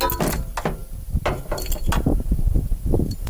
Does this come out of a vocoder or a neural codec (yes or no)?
no